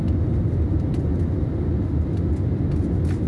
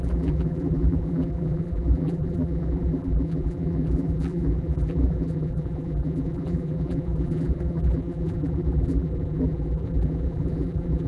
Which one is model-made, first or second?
second